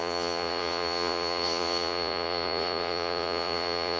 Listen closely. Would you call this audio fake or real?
fake